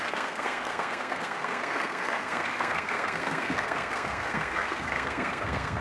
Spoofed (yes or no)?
yes